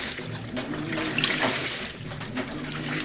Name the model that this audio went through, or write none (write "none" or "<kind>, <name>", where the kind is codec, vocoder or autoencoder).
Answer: none